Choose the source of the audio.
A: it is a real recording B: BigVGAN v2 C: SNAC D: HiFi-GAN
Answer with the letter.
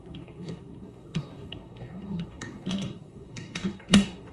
C